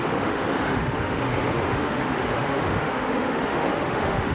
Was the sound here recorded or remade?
remade